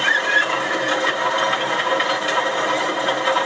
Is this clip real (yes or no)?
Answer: no